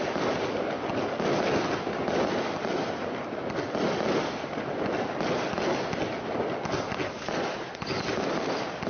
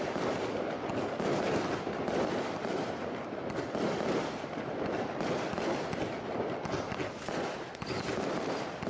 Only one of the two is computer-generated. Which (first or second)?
second